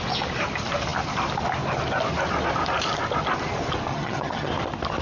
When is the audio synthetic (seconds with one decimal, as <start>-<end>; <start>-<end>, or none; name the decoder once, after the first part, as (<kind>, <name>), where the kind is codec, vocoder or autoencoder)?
3.9-4.5 (vocoder, HiFi-GAN)